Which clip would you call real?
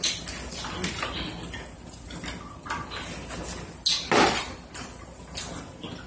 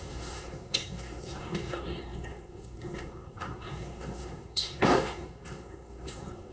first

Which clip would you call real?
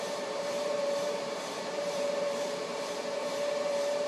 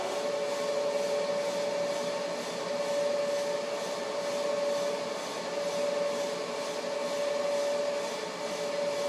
second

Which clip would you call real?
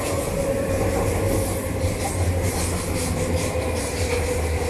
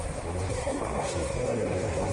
first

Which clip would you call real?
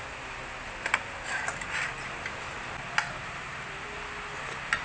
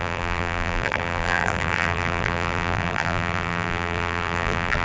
first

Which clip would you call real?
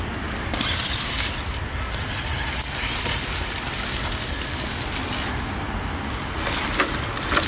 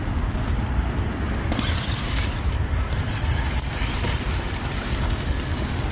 first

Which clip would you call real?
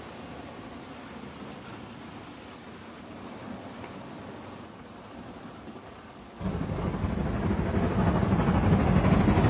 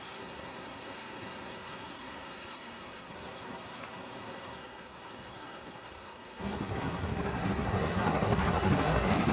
first